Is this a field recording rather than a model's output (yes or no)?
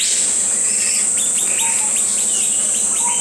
yes